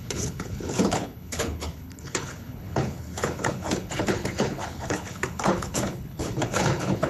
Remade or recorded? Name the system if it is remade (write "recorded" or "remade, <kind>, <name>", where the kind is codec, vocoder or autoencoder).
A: remade, codec, HILCodec